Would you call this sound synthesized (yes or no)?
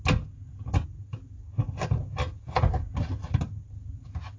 no